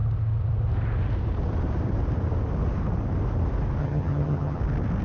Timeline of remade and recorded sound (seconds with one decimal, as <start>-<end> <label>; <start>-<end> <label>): 0.0-3.8 recorded; 3.8-4.6 remade; 4.6-5.0 recorded